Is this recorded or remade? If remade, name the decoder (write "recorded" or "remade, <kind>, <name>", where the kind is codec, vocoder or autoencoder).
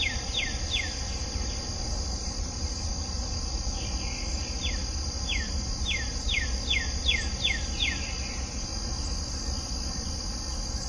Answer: recorded